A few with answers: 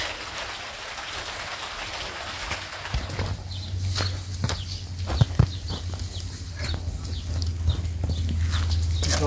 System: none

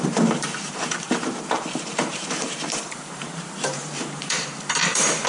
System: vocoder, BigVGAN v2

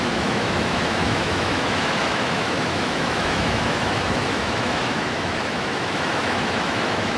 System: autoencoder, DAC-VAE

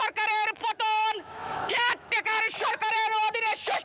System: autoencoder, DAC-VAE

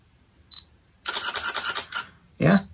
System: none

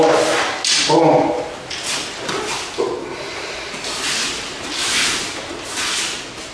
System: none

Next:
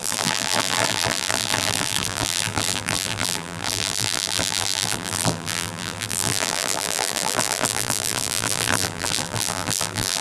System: vocoder, BigVGAN v2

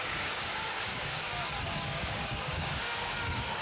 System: codec, DAC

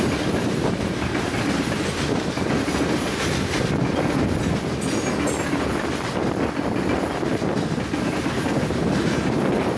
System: none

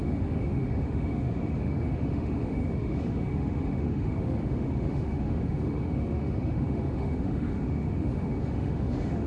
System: autoencoder, DAC-VAE